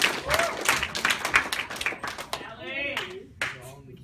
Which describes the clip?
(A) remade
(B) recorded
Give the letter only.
B